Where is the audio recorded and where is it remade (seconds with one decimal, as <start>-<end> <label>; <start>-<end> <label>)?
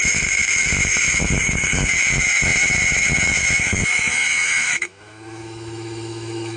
0.0-6.6 remade